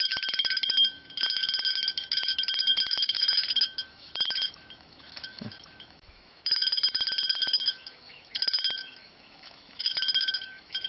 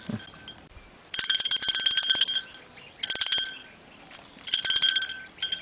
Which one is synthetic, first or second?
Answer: first